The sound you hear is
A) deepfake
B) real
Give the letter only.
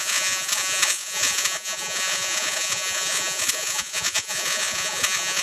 A